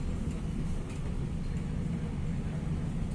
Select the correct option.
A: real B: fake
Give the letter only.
A